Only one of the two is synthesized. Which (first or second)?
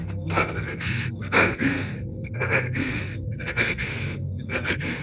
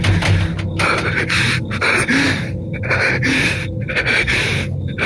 first